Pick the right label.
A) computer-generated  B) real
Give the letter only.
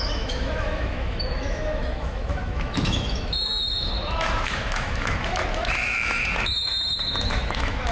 A